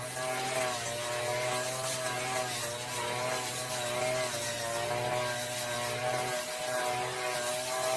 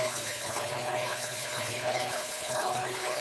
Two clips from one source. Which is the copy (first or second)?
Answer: second